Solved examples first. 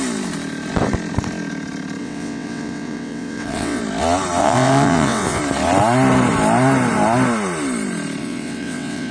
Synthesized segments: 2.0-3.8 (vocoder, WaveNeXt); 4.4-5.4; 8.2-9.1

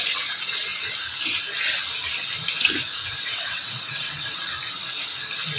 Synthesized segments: 3.0-4.4 (vocoder, WaveNeXt)

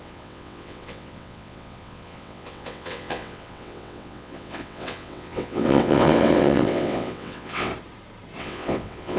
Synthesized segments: 0.0-7.7 (vocoder, WaveNeXt); 8.4-9.2

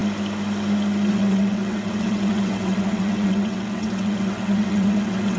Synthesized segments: 1.1-5.4 (vocoder, WaveNeXt)

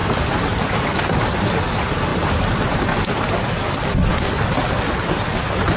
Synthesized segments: none